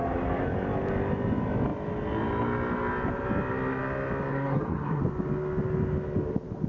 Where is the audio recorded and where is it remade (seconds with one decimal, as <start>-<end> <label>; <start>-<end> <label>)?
0.0-4.3 recorded; 4.3-5.0 remade; 5.0-6.7 recorded